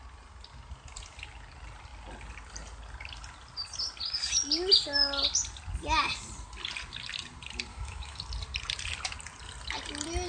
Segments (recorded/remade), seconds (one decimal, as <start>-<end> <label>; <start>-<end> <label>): 0.0-7.7 recorded; 7.7-8.2 remade; 8.2-10.3 recorded